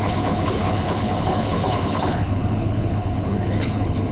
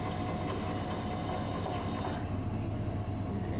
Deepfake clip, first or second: first